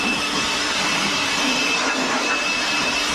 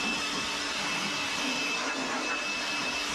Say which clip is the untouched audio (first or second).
second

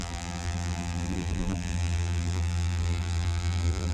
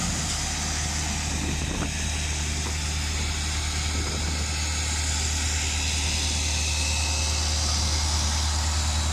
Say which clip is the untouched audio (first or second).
second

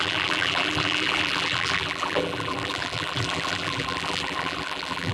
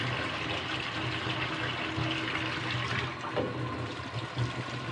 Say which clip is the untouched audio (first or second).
second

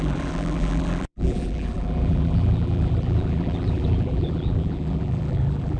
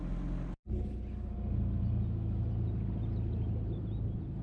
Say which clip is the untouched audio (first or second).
second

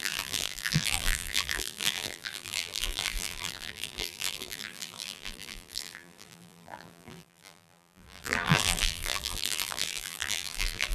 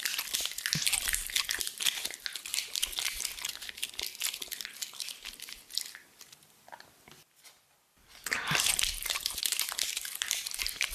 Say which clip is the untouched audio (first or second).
second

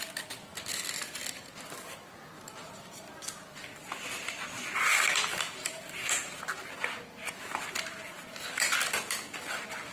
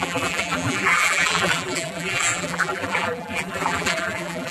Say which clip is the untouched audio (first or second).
first